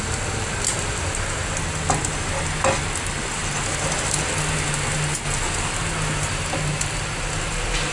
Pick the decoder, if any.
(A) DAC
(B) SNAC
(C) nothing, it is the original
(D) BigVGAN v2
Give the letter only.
C